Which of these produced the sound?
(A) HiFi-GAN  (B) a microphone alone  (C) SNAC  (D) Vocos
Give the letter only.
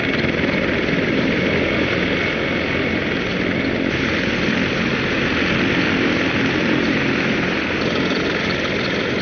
B